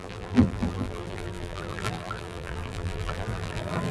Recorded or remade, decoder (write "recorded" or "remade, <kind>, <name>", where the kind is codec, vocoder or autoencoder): remade, vocoder, BigVGAN v2